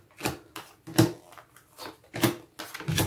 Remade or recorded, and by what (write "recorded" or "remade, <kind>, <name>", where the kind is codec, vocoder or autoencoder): recorded